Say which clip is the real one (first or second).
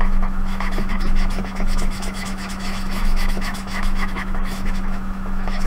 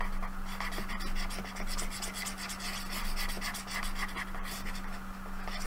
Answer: second